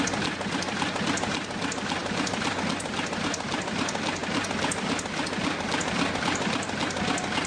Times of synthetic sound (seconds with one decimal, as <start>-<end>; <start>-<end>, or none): 2.0-2.8; 4.2-6.2